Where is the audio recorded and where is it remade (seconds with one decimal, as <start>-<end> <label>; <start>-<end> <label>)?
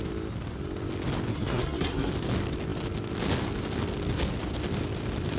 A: 0.0-1.3 recorded; 1.3-2.1 remade; 2.1-5.4 recorded